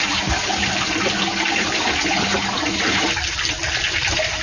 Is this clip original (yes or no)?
yes